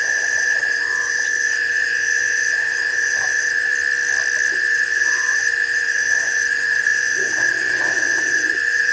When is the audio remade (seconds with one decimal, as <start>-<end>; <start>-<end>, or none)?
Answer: 0.0-3.7; 4.5-8.9